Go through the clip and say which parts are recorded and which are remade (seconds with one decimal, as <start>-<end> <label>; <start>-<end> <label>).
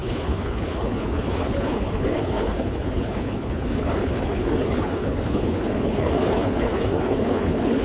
0.0-7.8 remade